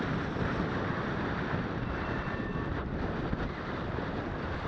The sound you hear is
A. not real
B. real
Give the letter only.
A